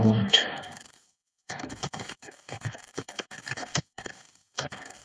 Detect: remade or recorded remade